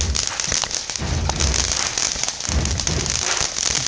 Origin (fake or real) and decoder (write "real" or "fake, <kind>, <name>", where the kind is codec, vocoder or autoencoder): real